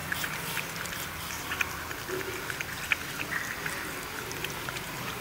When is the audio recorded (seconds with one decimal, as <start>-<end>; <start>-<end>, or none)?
0.0-4.4